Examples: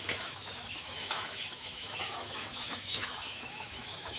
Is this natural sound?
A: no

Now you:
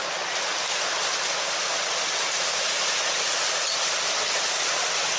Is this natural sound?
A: yes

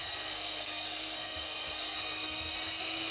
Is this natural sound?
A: no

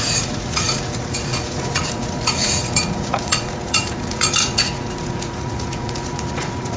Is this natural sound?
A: no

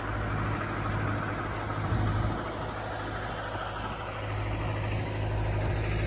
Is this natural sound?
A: yes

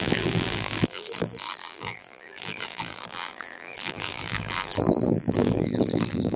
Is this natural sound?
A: no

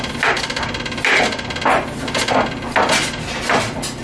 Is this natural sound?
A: yes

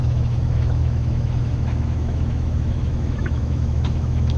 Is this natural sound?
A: no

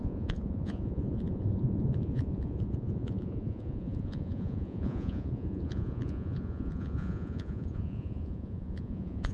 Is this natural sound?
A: no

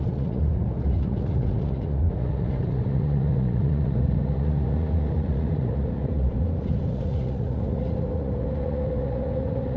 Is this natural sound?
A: no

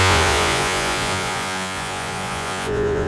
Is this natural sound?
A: no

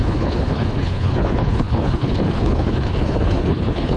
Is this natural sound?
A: no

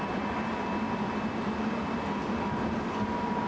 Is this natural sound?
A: yes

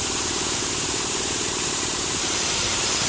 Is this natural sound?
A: no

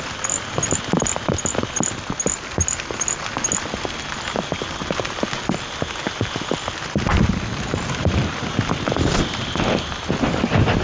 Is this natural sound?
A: yes